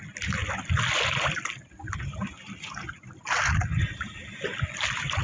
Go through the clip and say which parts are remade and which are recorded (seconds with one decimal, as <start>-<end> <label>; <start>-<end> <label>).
0.0-5.2 recorded